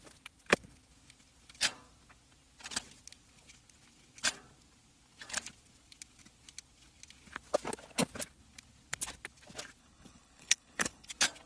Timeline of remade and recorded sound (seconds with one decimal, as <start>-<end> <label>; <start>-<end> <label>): 0.0-9.8 recorded; 9.8-11.1 remade; 11.1-11.5 recorded